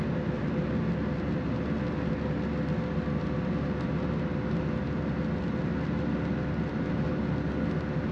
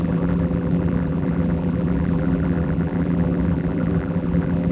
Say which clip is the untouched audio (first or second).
first